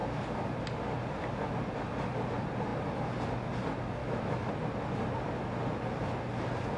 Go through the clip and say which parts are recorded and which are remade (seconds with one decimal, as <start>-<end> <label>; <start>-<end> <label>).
0.0-4.0 recorded; 4.0-4.5 remade; 4.5-6.8 recorded